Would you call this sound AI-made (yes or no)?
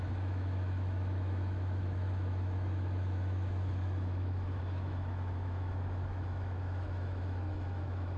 yes